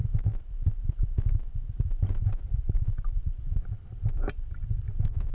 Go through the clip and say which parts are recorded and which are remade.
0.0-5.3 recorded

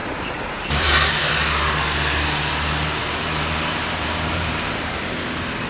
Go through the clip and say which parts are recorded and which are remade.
0.0-1.1 remade; 1.1-3.0 recorded; 3.0-5.0 remade; 5.0-5.7 recorded

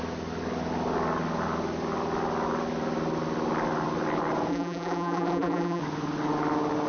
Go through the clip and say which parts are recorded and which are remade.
0.0-4.5 recorded; 4.5-5.8 remade; 5.8-6.9 recorded

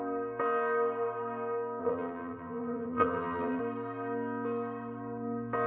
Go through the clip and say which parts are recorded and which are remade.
0.0-1.8 recorded; 1.8-3.6 remade; 3.6-5.7 recorded

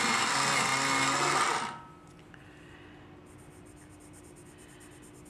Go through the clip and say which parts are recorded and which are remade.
0.0-5.3 recorded